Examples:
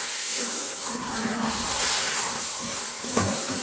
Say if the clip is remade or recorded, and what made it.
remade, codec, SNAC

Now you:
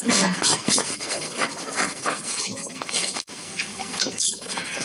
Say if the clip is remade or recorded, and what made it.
remade, codec, SNAC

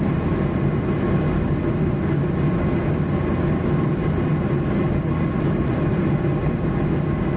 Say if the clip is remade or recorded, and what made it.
recorded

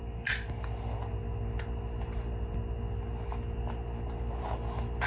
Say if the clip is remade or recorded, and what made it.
recorded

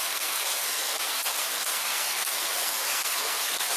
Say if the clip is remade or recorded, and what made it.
remade, codec, SNAC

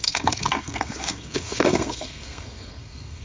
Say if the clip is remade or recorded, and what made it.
remade, codec, SNAC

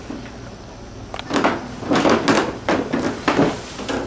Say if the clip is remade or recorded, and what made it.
recorded